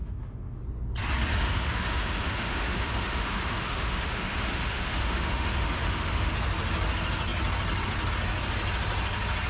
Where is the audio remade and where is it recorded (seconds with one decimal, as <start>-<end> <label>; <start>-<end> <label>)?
0.0-0.6 remade; 0.6-1.3 recorded; 1.3-6.3 remade; 6.3-9.5 recorded